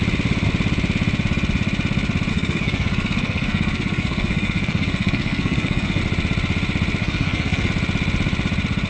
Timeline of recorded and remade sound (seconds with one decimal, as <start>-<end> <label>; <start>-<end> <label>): 0.0-2.3 recorded; 2.3-6.0 remade; 6.0-7.0 recorded; 7.0-7.7 remade; 7.7-8.9 recorded